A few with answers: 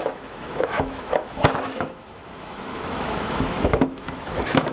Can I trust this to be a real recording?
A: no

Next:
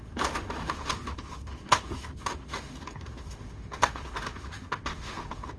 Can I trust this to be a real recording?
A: no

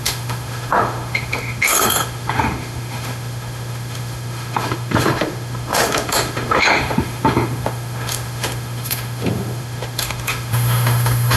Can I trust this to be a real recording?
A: no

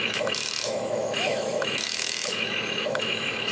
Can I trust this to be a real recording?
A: no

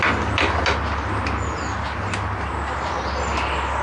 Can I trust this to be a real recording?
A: yes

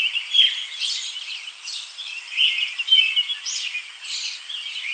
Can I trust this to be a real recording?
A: yes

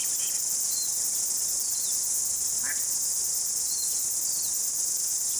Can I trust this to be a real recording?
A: yes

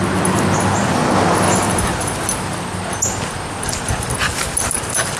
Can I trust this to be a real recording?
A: yes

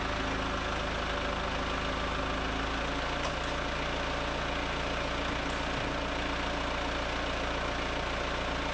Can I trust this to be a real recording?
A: yes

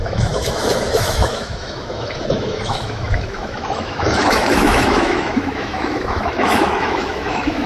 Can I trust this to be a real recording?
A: no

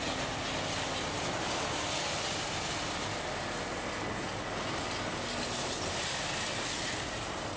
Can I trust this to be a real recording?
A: yes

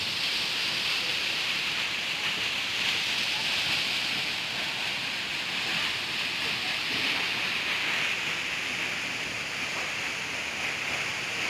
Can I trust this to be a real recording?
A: yes